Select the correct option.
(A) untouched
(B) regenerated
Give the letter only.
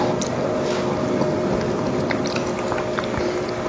A